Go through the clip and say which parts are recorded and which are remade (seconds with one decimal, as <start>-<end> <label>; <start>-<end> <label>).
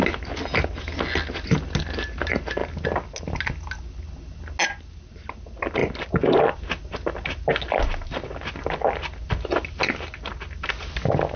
0.0-11.4 recorded